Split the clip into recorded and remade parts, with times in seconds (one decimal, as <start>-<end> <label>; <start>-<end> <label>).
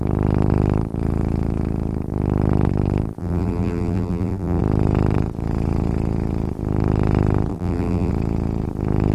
0.0-3.2 recorded; 3.2-4.6 remade; 4.6-7.5 recorded; 7.5-8.1 remade; 8.1-9.1 recorded